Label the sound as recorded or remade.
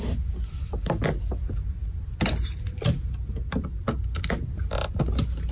recorded